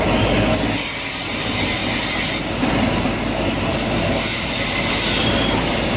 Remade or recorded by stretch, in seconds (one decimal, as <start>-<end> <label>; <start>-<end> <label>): 0.0-6.0 recorded